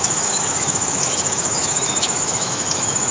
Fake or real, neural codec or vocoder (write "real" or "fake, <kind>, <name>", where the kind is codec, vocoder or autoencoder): fake, autoencoder, DAC-VAE